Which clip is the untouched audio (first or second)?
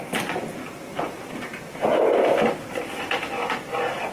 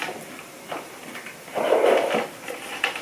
first